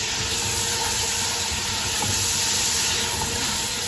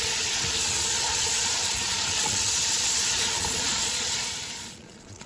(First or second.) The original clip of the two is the first